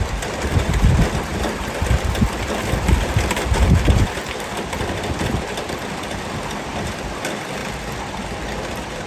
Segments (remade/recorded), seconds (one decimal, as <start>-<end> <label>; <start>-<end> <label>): 0.0-9.1 remade

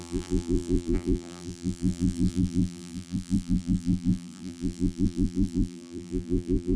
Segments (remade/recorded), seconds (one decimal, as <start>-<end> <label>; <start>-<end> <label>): 0.0-6.8 remade

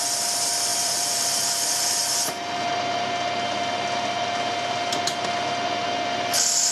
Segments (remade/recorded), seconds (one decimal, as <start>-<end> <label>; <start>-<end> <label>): 0.0-0.7 recorded; 0.7-2.0 remade; 2.0-6.7 recorded

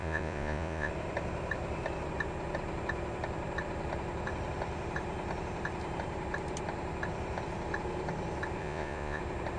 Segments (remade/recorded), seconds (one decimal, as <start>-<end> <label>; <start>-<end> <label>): 0.0-0.9 remade; 0.9-8.6 recorded; 8.6-9.2 remade; 9.2-9.6 recorded

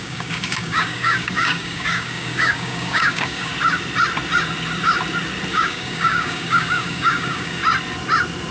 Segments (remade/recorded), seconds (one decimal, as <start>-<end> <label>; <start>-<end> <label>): 0.0-3.5 remade; 3.5-5.5 recorded; 5.5-7.6 remade; 7.6-8.5 recorded

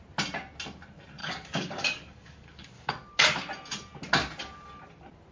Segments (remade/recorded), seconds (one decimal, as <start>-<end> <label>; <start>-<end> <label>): 0.0-1.2 recorded; 1.2-2.9 remade; 2.9-5.3 recorded